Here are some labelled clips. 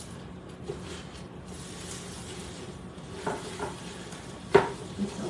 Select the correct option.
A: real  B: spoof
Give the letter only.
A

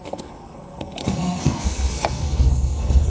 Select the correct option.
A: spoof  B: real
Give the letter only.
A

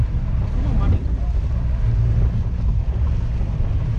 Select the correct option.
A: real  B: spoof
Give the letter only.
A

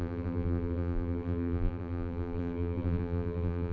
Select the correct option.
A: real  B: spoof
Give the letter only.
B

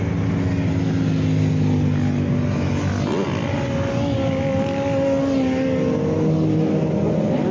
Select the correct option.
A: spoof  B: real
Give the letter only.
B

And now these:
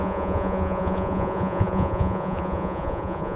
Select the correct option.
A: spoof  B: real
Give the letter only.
A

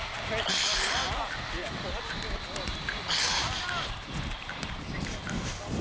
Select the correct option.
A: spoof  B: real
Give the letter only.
B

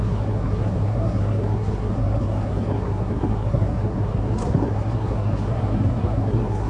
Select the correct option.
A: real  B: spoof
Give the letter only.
B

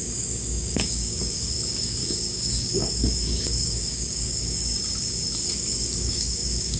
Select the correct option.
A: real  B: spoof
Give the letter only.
B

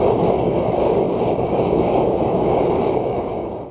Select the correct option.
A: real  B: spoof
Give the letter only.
B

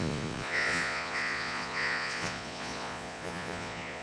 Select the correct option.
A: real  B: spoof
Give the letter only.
B